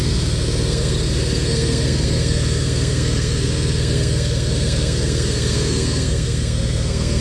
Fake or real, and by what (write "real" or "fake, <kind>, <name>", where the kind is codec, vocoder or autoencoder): fake, codec, SNAC